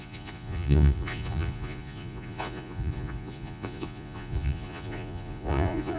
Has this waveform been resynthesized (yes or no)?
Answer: yes